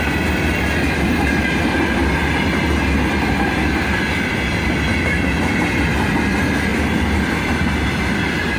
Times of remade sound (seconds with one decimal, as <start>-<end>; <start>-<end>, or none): none